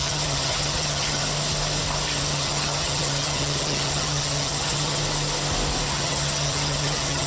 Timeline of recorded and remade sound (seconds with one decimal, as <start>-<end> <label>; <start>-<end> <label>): 0.0-1.2 remade; 1.2-2.2 recorded; 2.2-5.0 remade; 5.0-5.9 recorded; 5.9-7.3 remade